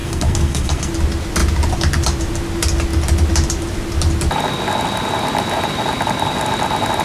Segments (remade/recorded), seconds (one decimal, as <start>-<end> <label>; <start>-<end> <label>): 0.0-0.9 remade; 0.9-7.0 recorded